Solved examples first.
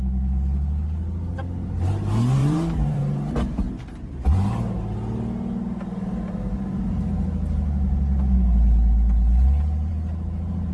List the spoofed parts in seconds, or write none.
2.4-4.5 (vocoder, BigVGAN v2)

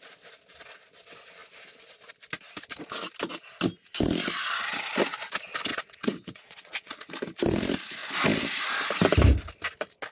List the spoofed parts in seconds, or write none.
5.7-7.1 (vocoder, WaveNeXt)

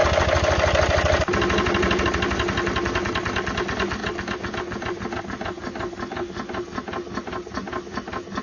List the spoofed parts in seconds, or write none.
none

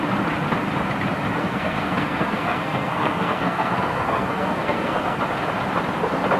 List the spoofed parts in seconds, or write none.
1.4-5.2 (codec, SNAC)

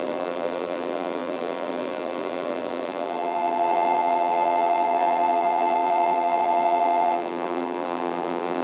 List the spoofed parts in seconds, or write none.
0.0-8.6 (vocoder, BigVGAN v2)

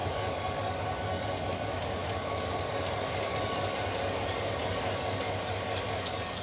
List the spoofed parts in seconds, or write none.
0.0-6.4 (codec, DAC)